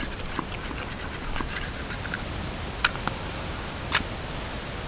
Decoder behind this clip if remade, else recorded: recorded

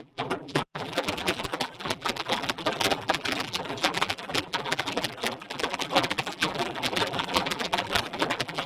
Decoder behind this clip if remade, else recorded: remade, vocoder, BigVGAN v2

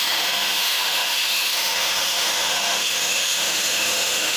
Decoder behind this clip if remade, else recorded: remade, autoencoder, DAC-VAE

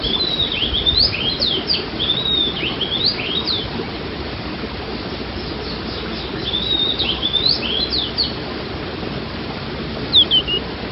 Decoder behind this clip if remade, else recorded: recorded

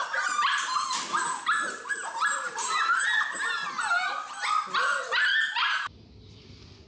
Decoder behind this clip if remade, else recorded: recorded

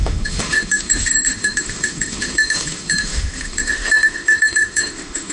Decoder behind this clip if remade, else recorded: remade, autoencoder, DAC-VAE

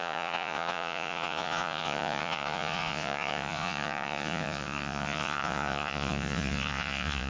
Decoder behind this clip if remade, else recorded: remade, vocoder, Vocos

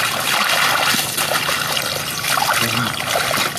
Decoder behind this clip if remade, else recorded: recorded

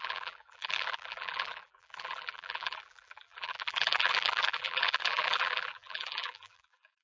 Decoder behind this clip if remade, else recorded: remade, vocoder, BigVGAN v2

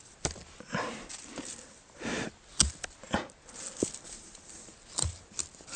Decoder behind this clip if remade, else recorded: recorded